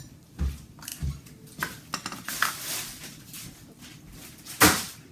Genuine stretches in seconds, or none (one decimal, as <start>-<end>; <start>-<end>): 0.0-5.1